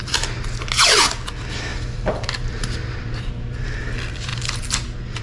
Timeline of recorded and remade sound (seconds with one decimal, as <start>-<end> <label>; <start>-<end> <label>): 0.0-1.7 recorded; 1.7-3.2 remade; 3.2-5.2 recorded